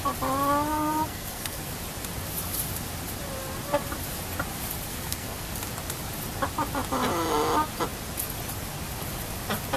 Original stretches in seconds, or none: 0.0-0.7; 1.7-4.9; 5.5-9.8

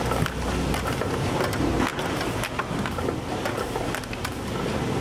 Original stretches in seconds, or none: 0.0-5.0

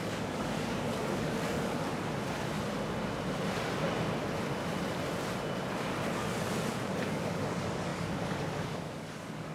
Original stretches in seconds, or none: 1.9-6.7

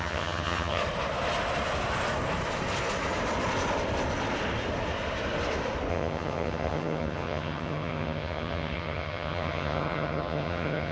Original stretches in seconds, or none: 0.8-5.9

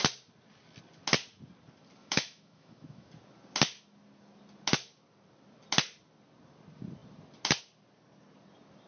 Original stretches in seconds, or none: 0.0-2.0; 3.1-8.9

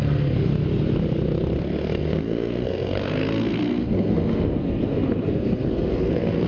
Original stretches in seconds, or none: 0.5-1.6